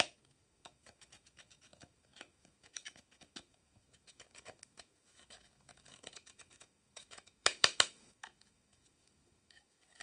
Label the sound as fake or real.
fake